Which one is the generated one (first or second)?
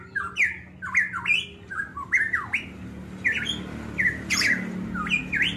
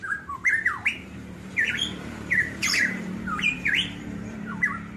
second